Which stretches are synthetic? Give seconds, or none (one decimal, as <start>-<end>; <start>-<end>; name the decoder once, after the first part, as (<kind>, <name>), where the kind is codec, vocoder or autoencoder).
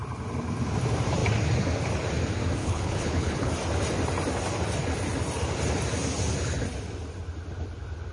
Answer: 2.6-3.5 (codec, HILCodec)